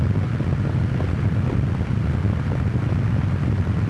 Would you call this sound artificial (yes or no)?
yes